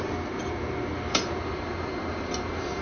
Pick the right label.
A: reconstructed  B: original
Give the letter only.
B